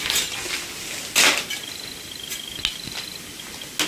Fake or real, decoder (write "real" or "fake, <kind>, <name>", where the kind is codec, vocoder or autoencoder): real